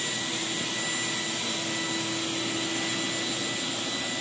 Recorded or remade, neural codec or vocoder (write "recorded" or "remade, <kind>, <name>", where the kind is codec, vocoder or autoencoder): recorded